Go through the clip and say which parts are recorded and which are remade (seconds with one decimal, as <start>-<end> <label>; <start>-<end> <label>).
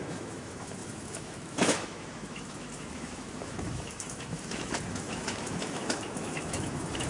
0.0-7.1 remade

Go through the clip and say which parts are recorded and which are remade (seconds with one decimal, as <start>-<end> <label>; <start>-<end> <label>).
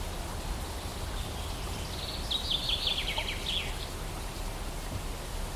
0.0-5.6 recorded